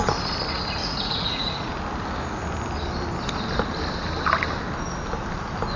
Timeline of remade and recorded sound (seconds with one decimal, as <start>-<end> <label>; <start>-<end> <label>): 0.0-0.8 recorded; 0.8-1.7 remade; 1.7-5.8 recorded